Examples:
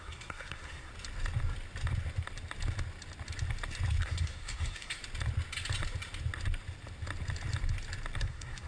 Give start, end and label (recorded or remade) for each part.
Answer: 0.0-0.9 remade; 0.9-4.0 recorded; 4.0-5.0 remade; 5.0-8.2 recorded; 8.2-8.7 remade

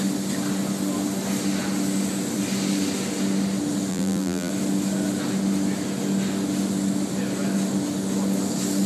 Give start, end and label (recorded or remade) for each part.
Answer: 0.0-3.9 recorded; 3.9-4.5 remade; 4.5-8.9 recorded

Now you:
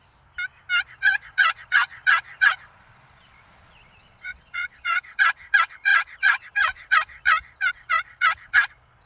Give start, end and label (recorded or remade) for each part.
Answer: 0.0-0.8 recorded; 0.8-9.1 remade

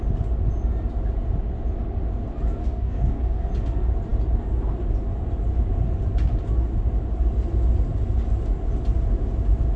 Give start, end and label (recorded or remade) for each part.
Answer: 0.0-2.6 recorded; 2.6-3.5 remade; 3.5-9.8 recorded